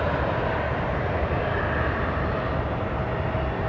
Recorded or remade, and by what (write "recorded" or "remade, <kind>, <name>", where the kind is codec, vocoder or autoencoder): recorded